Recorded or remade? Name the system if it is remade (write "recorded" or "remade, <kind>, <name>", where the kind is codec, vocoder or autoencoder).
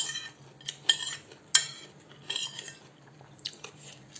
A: recorded